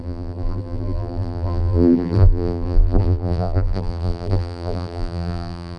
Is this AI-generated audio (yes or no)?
yes